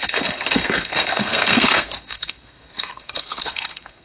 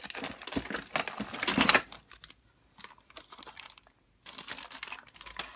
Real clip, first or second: second